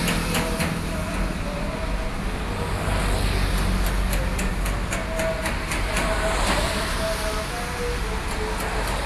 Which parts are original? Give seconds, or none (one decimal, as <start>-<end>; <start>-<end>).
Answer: 0.0-9.1